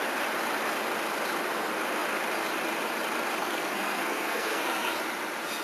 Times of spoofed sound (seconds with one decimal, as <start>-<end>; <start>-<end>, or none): 3.4-5.0